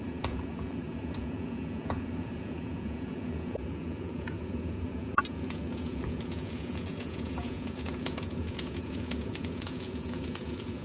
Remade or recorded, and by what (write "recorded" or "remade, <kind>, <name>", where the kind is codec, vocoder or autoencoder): remade, vocoder, Vocos